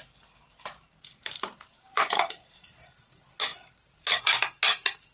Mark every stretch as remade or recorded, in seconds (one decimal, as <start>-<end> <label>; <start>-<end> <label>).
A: 0.0-1.1 recorded; 1.1-3.1 remade; 3.1-3.5 recorded; 3.5-4.2 remade; 4.2-5.1 recorded